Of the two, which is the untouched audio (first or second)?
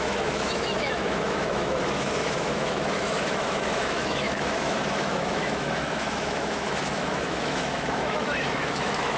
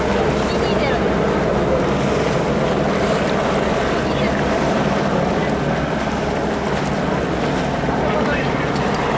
second